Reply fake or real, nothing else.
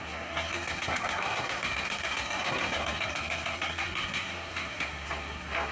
fake